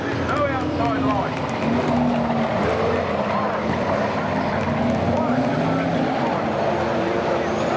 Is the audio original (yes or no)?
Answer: yes